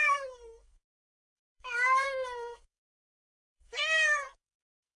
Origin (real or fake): fake